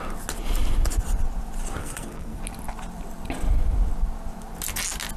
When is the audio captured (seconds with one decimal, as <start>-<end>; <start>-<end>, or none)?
0.0-1.8; 2.4-5.2